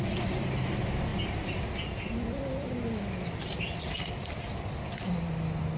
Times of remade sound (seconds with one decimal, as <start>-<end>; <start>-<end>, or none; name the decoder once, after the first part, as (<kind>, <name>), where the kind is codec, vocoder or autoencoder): none